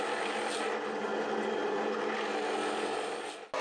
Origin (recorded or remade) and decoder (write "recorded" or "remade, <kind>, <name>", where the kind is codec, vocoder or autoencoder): recorded